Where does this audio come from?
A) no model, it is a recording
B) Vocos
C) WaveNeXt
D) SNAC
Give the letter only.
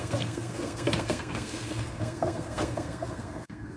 D